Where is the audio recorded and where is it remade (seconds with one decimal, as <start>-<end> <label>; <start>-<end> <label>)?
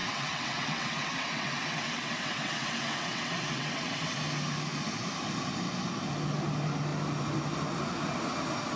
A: 0.0-4.2 remade; 4.2-8.8 recorded